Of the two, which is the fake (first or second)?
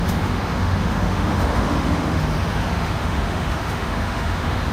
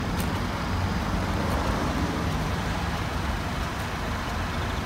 first